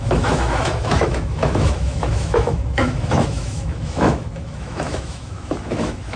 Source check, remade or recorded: remade